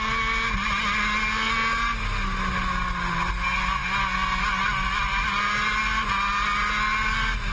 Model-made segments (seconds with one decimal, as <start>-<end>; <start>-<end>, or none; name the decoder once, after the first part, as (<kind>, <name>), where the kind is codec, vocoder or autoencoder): none